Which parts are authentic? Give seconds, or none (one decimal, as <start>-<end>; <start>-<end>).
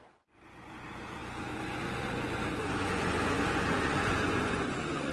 none